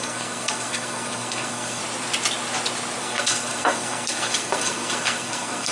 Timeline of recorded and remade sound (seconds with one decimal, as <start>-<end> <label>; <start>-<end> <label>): 0.0-1.8 remade; 1.8-3.0 recorded; 3.0-5.7 remade